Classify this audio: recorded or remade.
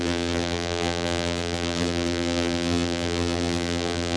remade